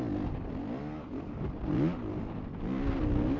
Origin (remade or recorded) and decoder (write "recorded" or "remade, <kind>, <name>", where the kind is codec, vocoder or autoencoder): recorded